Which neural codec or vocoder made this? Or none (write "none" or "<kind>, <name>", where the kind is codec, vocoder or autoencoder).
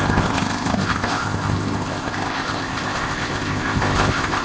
codec, ZipCodec